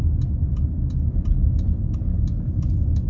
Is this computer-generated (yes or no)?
no